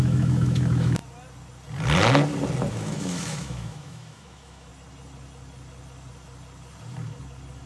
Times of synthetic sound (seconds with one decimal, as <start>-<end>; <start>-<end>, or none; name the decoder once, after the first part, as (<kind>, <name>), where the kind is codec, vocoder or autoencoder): 0.0-1.0 (autoencoder, DAC-VAE); 2.7-4.7